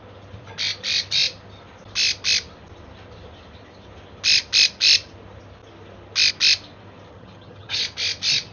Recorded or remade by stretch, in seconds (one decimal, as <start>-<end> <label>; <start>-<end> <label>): 0.0-7.1 recorded; 7.1-7.8 remade; 7.8-8.5 recorded

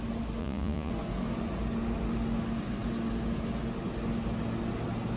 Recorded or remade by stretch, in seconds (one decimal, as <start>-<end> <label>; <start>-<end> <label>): 0.0-0.4 recorded; 0.4-0.9 remade; 0.9-5.2 recorded